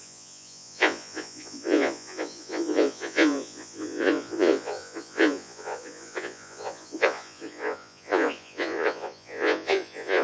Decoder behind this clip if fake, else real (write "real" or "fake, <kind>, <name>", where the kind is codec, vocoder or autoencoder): fake, vocoder, Vocos